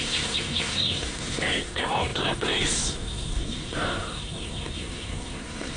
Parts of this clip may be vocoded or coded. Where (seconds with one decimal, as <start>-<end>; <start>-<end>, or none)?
0.0-5.8